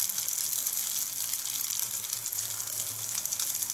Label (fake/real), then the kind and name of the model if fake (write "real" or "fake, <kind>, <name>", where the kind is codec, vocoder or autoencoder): real